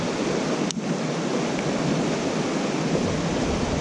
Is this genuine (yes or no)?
yes